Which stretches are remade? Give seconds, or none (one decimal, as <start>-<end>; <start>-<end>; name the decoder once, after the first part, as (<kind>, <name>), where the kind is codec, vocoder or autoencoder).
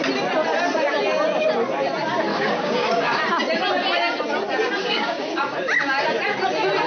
2.3-3.2 (codec, DAC); 4.8-5.4